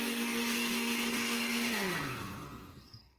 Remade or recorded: remade